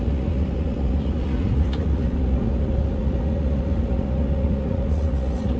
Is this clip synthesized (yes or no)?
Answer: yes